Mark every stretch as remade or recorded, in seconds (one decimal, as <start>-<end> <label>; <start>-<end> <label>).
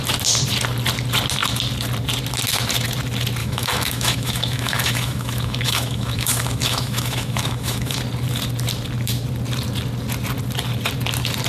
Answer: 0.0-3.4 recorded; 3.4-8.0 remade; 8.0-11.5 recorded